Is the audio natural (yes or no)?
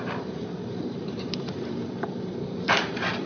no